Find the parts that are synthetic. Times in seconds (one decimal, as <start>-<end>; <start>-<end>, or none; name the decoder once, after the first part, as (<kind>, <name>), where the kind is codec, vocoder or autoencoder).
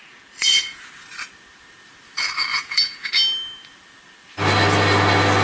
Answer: 0.0-0.9 (vocoder, Vocos); 2.5-3.1